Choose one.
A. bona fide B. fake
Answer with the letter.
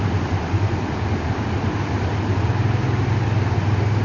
A